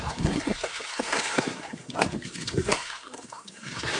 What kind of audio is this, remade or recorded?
remade